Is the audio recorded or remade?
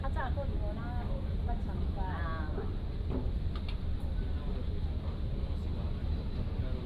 recorded